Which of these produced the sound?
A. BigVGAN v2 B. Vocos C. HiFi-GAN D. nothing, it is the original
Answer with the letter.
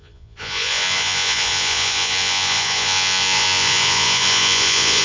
B